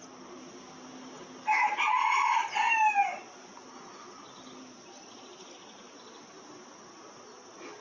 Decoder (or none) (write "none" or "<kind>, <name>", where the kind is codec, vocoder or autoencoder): none